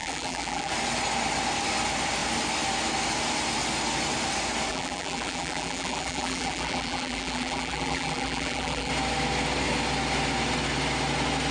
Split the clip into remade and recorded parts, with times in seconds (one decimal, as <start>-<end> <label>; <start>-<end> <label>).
0.0-0.7 remade; 0.7-4.7 recorded; 4.7-8.9 remade; 8.9-11.5 recorded